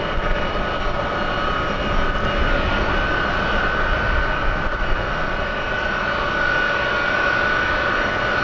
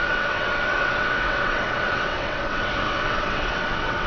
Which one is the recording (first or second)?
first